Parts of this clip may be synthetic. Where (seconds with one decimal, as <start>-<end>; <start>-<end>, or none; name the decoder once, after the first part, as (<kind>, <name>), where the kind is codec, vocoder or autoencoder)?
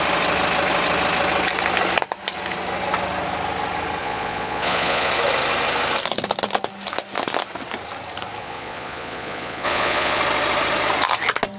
4.0-5.1 (vocoder, Vocos); 8.4-10.2